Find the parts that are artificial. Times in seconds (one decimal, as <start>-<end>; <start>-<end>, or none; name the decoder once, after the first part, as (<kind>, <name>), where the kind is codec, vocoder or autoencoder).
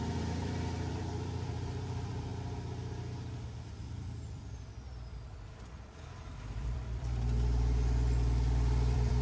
0.0-2.3 (vocoder, BigVGAN v2); 3.6-9.2